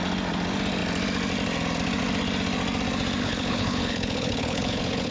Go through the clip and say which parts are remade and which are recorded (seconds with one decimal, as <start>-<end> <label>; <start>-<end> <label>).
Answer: 0.0-3.2 recorded; 3.2-5.1 remade